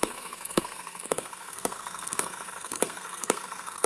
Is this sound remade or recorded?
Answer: remade